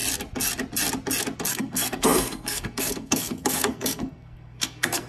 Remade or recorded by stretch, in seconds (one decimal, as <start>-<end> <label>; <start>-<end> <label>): 0.0-1.5 recorded; 1.5-5.1 remade